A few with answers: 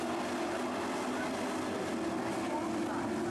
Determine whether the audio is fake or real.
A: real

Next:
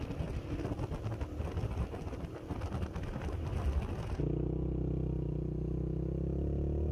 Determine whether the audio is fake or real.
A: real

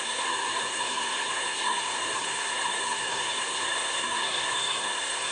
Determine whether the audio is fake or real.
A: fake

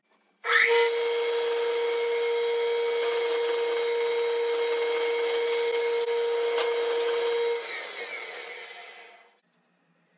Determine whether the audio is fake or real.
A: real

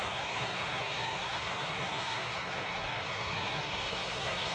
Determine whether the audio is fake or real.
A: fake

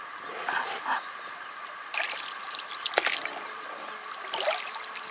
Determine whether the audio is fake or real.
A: real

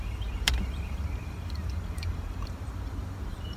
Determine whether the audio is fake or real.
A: fake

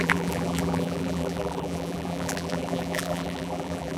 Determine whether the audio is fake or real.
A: fake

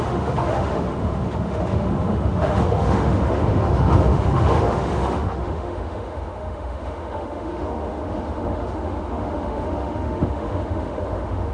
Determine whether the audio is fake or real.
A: fake